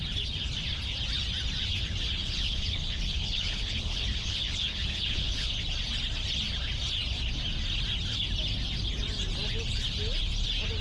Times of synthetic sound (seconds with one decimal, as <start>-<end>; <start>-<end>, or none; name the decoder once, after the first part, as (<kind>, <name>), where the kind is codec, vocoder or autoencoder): 2.2-5.5 (codec, HILCodec)